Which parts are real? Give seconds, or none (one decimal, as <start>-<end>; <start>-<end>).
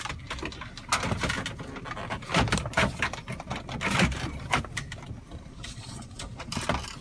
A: 0.0-5.5; 6.5-7.0